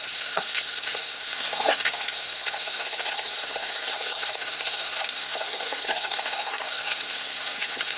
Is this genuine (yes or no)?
no